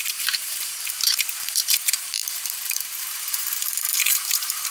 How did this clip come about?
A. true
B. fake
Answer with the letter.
B